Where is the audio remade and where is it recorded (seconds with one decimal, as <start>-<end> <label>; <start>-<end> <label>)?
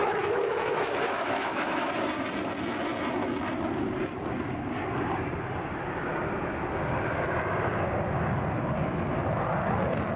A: 0.0-1.9 remade; 1.9-10.2 recorded